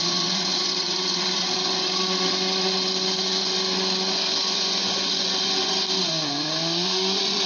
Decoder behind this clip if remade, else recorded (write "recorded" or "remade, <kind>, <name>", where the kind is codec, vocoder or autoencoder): remade, vocoder, Vocos